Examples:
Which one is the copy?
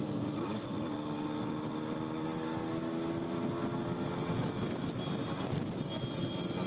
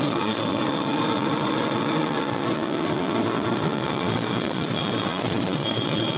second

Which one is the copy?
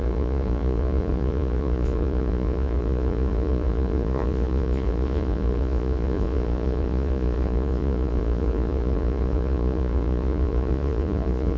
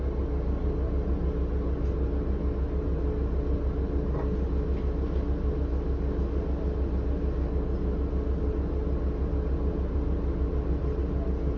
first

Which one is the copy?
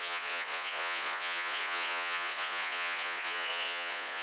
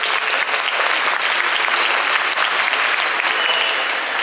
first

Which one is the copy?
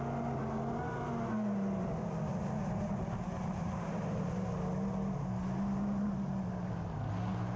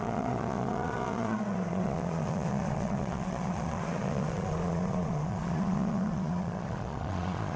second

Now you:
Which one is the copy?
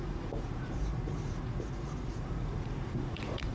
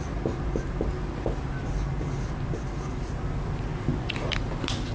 first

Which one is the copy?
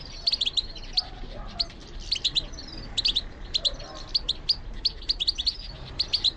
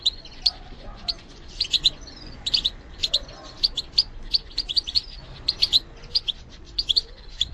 second